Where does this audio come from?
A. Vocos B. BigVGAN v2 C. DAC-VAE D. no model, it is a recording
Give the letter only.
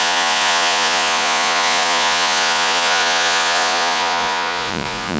A